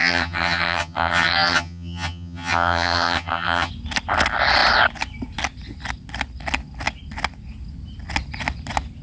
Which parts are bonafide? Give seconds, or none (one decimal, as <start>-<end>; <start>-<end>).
3.7-9.0